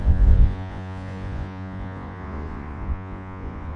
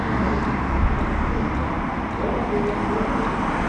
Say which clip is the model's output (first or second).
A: first